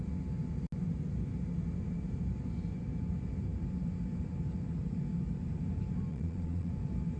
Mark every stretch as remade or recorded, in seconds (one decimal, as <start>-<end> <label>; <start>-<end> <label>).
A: 0.0-6.1 recorded; 6.1-6.7 remade; 6.7-7.2 recorded